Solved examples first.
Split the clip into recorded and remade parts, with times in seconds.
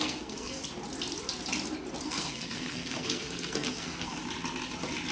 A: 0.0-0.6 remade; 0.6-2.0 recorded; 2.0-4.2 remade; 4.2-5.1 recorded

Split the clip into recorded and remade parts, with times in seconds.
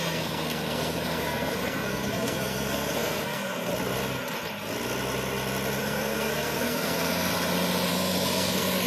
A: 0.0-3.7 remade; 3.7-5.8 recorded; 5.8-7.3 remade; 7.3-7.9 recorded; 7.9-8.9 remade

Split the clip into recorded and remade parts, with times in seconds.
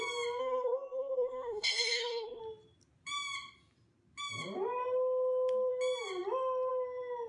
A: 0.0-0.4 recorded; 0.4-2.4 remade; 2.4-7.3 recorded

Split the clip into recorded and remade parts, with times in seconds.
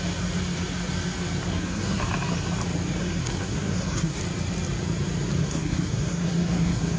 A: 0.0-1.5 recorded; 1.5-2.0 remade; 2.0-3.0 recorded; 3.0-4.2 remade; 4.2-5.4 recorded; 5.4-7.0 remade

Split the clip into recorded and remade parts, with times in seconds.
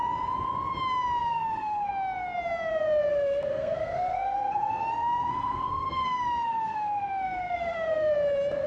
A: 0.0-1.2 recorded; 1.2-1.9 remade; 1.9-3.1 recorded; 3.1-8.1 remade; 8.1-8.7 recorded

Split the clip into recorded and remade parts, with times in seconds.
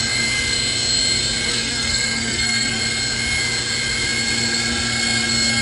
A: 0.0-1.5 recorded; 1.5-2.8 remade; 2.8-5.6 recorded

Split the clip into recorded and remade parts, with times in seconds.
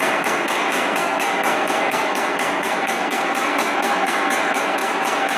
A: 0.0-5.4 remade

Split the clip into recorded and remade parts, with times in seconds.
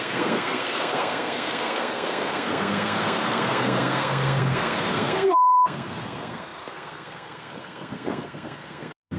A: 0.0-9.2 remade